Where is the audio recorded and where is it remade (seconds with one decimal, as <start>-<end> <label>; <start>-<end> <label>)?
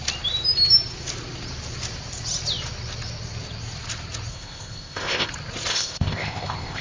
0.0-4.3 recorded; 4.3-5.3 remade; 5.3-5.7 recorded; 5.7-6.8 remade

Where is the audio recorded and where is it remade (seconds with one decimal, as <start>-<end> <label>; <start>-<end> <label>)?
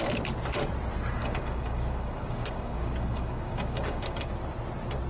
0.0-1.2 recorded; 1.2-4.3 remade; 4.3-5.1 recorded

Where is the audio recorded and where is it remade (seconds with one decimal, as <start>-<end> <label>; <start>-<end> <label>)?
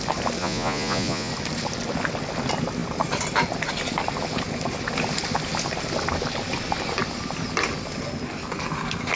0.0-0.4 recorded; 0.4-1.3 remade; 1.3-9.2 recorded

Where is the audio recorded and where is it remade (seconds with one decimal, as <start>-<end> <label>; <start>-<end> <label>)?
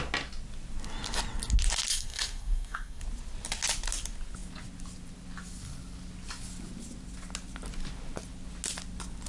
0.0-1.9 recorded; 1.9-3.0 remade; 3.0-9.3 recorded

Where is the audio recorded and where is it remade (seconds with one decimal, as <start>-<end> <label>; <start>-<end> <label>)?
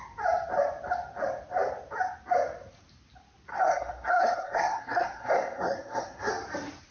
0.0-3.5 recorded; 3.5-6.3 remade; 6.3-6.9 recorded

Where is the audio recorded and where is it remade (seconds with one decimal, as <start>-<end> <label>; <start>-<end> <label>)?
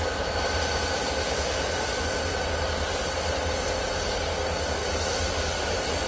0.0-6.1 recorded